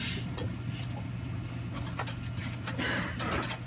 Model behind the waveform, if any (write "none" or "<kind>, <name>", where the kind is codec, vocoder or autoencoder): none